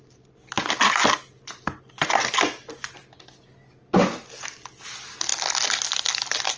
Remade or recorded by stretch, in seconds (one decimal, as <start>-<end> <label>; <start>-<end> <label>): 0.0-6.6 recorded